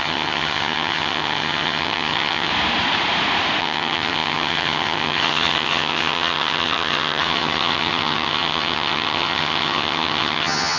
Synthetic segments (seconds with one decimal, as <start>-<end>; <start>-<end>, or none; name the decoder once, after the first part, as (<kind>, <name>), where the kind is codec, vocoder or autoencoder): 0.0-2.5 (vocoder, HiFi-GAN); 3.6-10.8